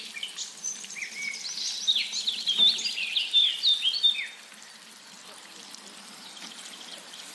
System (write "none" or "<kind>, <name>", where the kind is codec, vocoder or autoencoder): none